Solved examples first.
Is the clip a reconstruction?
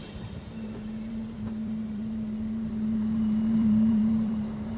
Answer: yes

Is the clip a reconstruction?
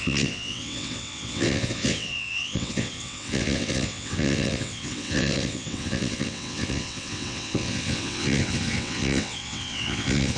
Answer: yes